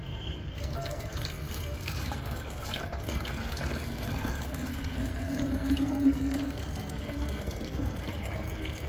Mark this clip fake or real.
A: fake